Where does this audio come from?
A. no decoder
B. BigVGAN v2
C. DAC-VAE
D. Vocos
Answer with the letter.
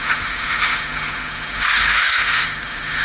C